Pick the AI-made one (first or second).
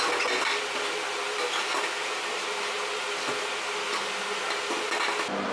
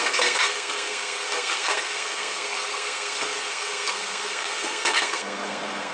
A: second